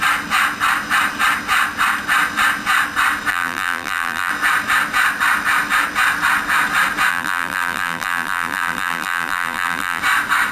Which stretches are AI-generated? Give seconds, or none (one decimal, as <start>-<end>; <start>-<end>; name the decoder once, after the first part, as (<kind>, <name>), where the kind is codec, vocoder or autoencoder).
3.3-4.3 (vocoder, BigVGAN v2); 7.1-10.0

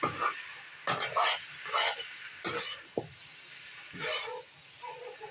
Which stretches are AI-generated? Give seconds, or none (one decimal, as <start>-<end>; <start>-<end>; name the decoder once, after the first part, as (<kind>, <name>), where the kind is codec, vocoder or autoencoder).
none

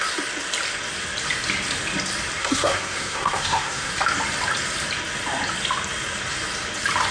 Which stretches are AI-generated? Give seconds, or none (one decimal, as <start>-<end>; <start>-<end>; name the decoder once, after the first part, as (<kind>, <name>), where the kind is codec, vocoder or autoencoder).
2.4-3.9 (codec, SNAC)

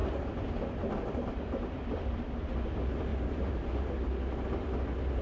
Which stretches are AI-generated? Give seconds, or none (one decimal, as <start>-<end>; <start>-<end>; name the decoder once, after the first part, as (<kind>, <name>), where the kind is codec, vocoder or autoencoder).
0.0-2.2 (vocoder, BigVGAN v2); 3.1-3.9

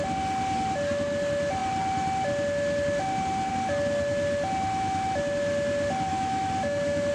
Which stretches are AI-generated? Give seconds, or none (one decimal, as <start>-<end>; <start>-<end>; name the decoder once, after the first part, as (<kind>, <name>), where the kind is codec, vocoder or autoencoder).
6.1-7.1 (autoencoder, DAC-VAE)

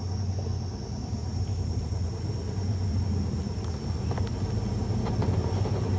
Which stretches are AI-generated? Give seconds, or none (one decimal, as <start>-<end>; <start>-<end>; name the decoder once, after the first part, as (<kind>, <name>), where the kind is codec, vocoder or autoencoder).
1.2-2.1 (vocoder, BigVGAN v2)

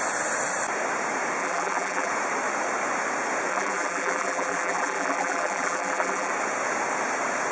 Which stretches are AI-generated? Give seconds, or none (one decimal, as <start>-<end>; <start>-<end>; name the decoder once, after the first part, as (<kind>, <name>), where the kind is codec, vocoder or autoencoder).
1.4-2.1 (vocoder, BigVGAN v2); 3.5-6.3